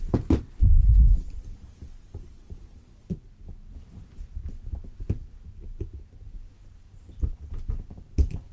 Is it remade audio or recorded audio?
recorded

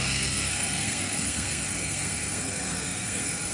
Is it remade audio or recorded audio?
remade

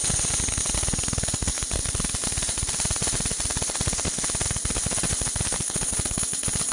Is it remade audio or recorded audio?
recorded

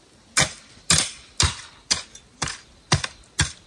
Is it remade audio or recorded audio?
recorded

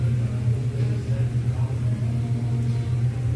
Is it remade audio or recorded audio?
recorded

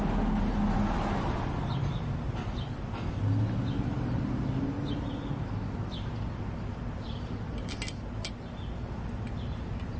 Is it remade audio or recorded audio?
recorded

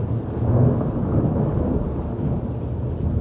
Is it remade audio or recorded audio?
recorded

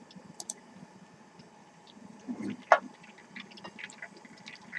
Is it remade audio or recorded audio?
recorded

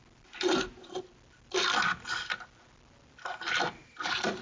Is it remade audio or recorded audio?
recorded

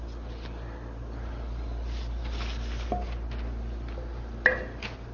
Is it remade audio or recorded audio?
recorded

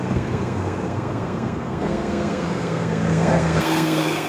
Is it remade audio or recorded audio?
remade